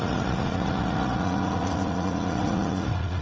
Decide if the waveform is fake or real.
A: fake